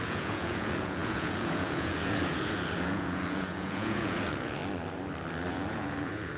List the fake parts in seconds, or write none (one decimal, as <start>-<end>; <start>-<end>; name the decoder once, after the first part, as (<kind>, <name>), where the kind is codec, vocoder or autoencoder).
0.0-4.6 (vocoder, Vocos); 5.5-6.4